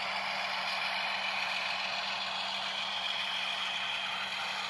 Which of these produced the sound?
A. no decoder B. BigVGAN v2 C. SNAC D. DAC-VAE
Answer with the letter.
A